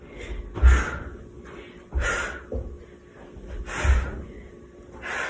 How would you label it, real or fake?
real